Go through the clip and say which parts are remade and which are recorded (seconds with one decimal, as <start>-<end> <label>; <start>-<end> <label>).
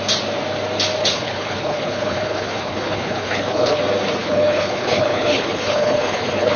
0.0-1.0 recorded; 1.0-3.8 remade; 3.8-4.2 recorded; 4.2-6.6 remade